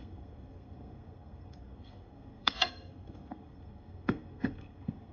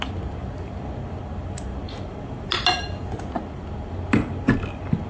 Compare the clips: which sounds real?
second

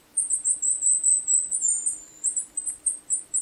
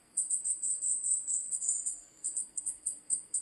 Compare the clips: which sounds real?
first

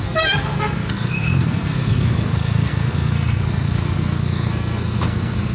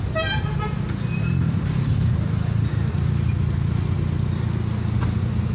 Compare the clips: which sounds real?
second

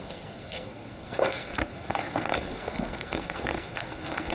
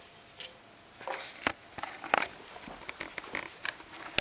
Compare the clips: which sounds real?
second